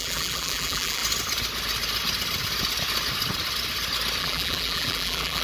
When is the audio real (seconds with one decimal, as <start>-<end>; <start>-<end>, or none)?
1.0-4.2